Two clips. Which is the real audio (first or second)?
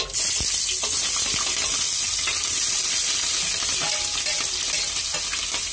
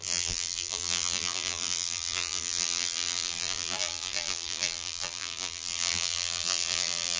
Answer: first